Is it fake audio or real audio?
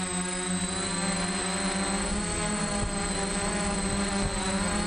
real